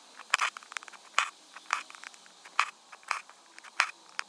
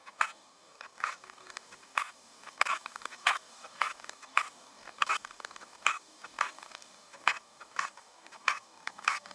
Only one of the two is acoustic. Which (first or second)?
first